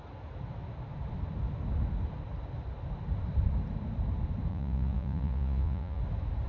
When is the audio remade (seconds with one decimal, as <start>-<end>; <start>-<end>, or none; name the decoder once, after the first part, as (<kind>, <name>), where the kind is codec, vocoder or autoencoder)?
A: 4.5-6.0 (vocoder, Vocos)